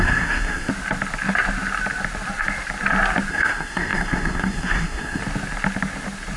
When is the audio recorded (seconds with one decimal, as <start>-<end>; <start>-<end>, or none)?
0.7-3.3; 5.2-6.4